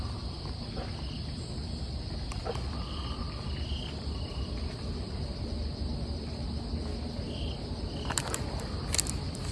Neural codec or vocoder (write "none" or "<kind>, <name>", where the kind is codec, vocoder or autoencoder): none